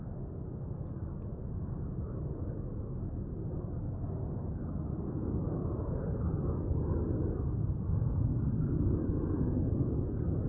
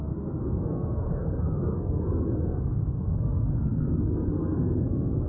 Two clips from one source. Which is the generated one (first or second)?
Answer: second